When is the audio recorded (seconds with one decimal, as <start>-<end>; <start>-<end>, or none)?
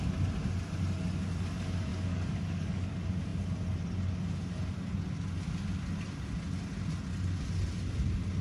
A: 0.0-1.9; 2.9-8.4